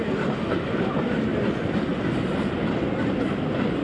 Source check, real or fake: real